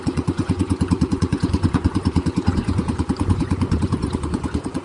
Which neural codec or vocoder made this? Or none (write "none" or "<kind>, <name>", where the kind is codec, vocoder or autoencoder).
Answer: vocoder, Vocos